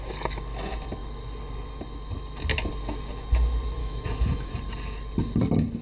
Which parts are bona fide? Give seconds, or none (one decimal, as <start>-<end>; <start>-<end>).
0.0-3.8; 4.5-5.8